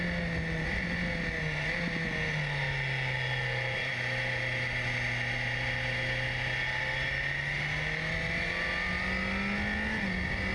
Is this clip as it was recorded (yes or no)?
yes